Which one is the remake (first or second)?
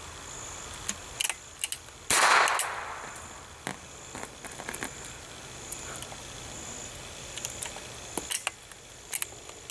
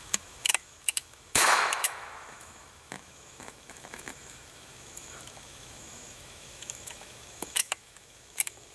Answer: second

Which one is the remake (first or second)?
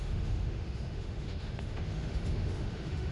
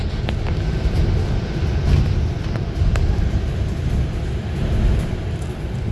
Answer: first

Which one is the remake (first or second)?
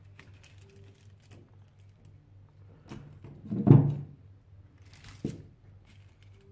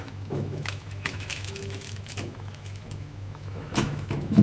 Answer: second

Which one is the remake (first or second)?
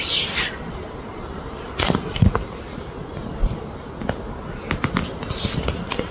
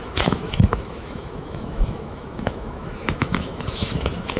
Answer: second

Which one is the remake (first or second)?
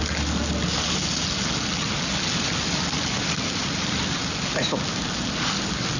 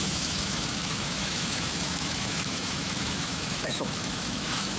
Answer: second